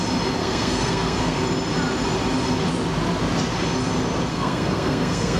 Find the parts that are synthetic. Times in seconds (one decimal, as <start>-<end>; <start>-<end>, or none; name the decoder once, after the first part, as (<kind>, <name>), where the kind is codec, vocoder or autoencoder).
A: 0.4-1.4 (codec, SNAC); 4.3-5.4